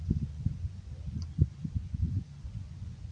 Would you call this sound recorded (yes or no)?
no